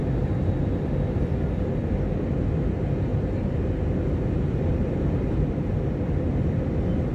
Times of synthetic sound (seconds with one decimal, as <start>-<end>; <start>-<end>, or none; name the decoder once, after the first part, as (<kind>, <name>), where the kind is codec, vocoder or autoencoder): 3.1-3.7 (vocoder, BigVGAN v2); 4.8-5.7